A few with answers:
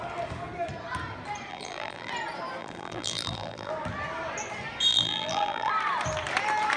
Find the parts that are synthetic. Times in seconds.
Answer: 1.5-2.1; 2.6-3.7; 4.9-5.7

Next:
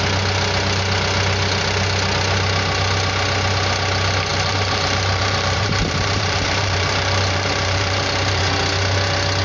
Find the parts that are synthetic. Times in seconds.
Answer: 4.3-8.4

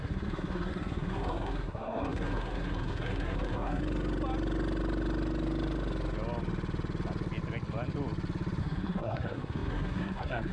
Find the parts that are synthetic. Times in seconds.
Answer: 0.0-3.8; 8.6-10.5

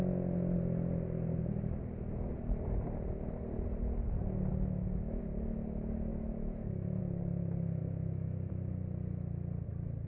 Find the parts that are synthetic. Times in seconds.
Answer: 4.5-5.2; 6.1-7.0; 7.8-8.5

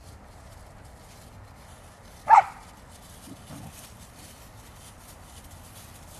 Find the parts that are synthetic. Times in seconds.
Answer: none